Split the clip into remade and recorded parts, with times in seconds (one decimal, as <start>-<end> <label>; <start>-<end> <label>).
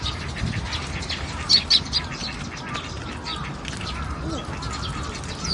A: 0.0-2.2 remade; 2.2-5.5 recorded